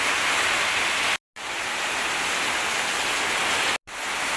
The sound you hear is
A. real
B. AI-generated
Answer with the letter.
A